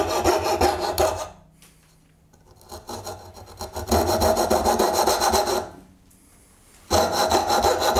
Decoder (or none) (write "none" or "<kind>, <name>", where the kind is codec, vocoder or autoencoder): none